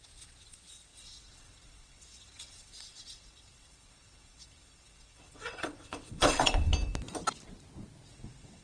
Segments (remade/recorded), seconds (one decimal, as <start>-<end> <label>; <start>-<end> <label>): 0.0-6.7 remade; 6.7-8.1 recorded; 8.1-8.6 remade